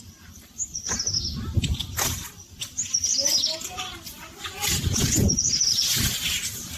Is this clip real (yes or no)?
yes